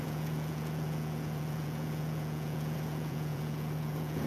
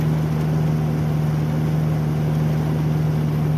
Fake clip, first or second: first